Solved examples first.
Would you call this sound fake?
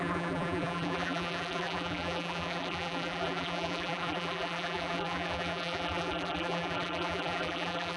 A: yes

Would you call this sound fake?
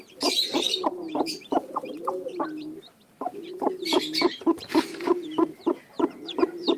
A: yes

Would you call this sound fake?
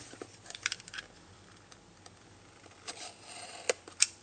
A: yes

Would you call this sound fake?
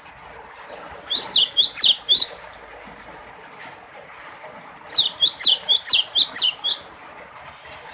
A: yes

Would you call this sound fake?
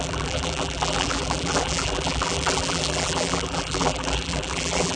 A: yes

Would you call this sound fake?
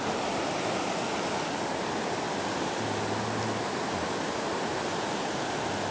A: no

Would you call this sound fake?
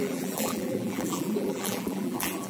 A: yes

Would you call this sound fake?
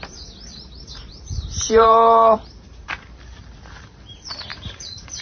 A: yes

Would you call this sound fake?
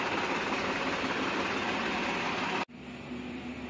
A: no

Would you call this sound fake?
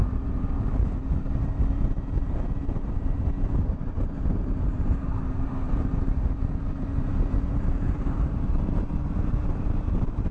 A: yes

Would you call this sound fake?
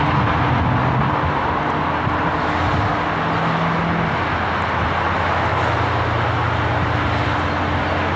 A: no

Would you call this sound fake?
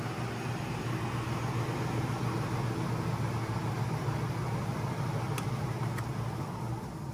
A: no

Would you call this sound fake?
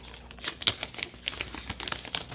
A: no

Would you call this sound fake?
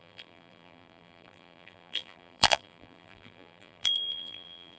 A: yes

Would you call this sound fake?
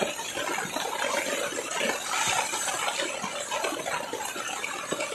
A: yes